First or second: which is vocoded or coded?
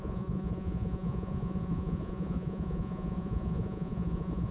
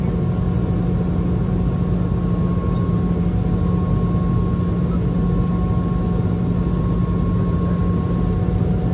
first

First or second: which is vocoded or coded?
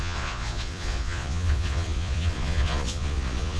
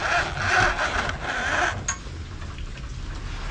first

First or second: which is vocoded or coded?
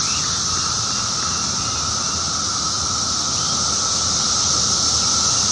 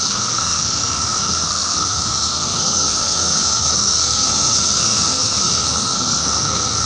second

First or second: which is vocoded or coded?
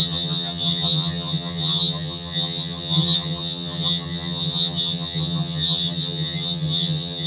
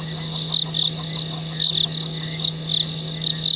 first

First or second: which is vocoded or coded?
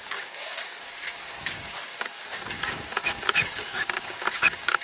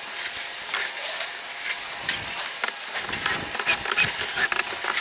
first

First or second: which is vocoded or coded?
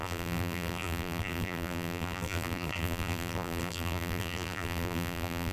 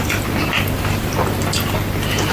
first